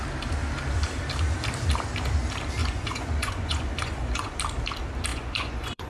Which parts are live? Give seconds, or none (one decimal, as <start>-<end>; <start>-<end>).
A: 0.0-2.6; 4.3-5.1